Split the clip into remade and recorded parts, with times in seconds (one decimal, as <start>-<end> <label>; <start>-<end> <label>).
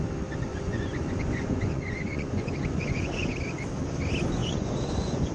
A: 0.0-0.5 recorded; 0.5-3.3 remade; 3.3-4.4 recorded; 4.4-5.3 remade